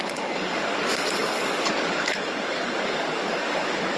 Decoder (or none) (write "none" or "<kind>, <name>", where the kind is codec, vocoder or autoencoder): codec, DAC